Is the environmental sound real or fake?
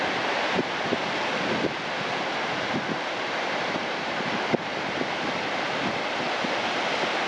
real